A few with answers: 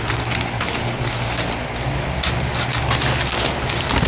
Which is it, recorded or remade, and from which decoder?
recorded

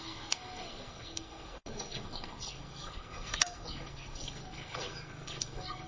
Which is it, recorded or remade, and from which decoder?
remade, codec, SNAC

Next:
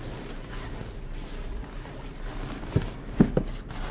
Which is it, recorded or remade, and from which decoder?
recorded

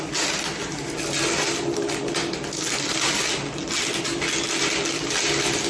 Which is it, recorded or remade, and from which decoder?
recorded